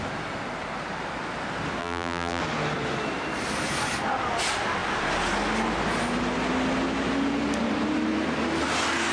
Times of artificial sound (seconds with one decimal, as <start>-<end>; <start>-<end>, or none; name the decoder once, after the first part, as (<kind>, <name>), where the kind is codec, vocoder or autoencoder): 1.8-2.4 (vocoder, BigVGAN v2)